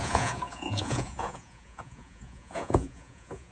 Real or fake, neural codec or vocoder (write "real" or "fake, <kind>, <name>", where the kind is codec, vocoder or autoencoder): fake, vocoder, Vocos